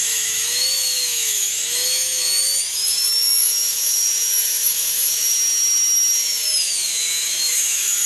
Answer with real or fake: fake